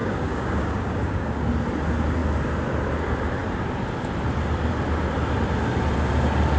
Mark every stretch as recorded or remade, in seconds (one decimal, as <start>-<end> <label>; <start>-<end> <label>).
0.0-1.5 remade; 1.5-6.6 recorded